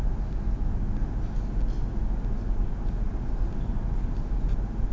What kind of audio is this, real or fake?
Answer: real